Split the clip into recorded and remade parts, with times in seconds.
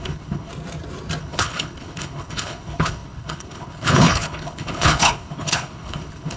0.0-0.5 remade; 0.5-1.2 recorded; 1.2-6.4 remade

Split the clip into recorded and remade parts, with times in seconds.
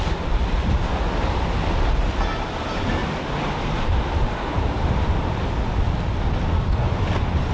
0.0-7.5 recorded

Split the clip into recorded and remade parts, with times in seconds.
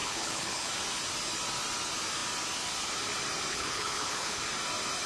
0.0-0.7 remade; 0.7-3.5 recorded; 3.5-4.4 remade; 4.4-5.1 recorded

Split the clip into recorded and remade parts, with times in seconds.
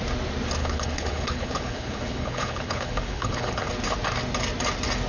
0.0-0.6 recorded; 0.6-3.7 remade; 3.7-5.1 recorded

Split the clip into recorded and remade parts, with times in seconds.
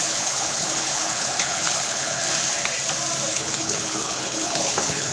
0.0-2.2 remade; 2.2-3.3 recorded; 3.3-5.1 remade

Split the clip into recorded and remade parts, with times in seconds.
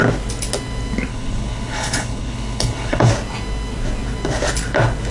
0.0-1.1 recorded; 1.1-3.1 remade; 3.1-5.1 recorded